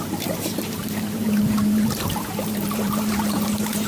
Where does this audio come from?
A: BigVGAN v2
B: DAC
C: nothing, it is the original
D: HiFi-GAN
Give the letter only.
A